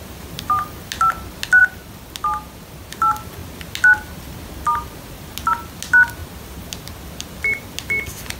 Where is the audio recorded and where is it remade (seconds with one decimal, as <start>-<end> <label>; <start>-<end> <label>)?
0.0-8.4 recorded